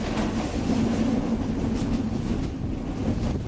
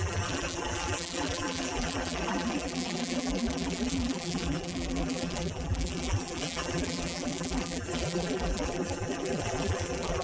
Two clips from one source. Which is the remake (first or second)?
second